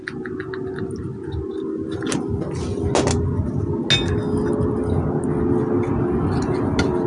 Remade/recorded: recorded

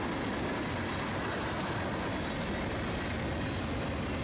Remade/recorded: recorded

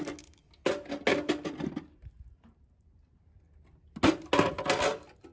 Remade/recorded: recorded